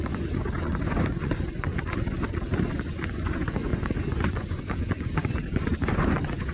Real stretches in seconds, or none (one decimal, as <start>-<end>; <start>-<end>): 1.7-2.7